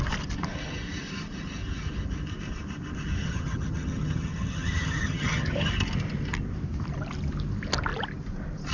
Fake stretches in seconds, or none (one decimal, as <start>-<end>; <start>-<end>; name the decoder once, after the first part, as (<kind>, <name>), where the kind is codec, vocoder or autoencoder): 3.2-5.7 (vocoder, HiFi-GAN)